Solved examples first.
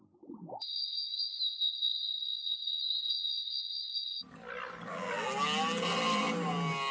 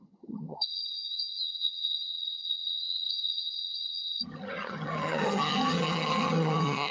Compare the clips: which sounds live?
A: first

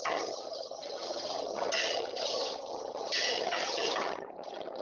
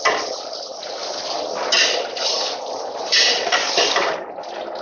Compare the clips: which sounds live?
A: second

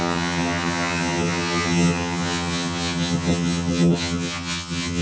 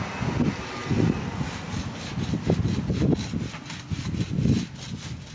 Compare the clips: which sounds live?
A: second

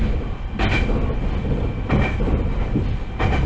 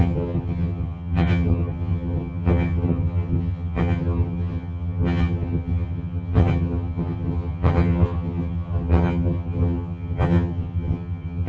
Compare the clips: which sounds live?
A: first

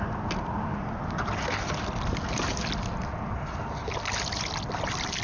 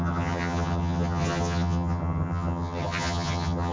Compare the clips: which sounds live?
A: first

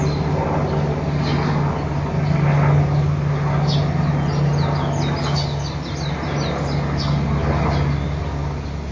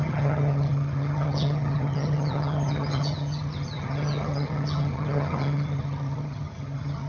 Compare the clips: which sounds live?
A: first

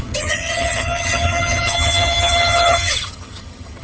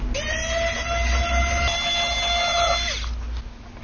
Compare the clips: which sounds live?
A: second